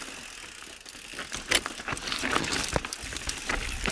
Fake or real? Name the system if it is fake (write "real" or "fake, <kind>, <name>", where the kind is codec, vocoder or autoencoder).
real